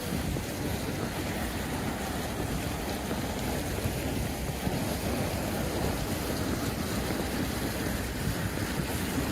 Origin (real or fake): real